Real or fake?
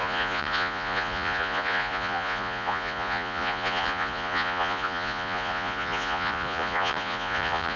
fake